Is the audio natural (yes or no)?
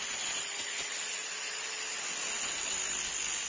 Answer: yes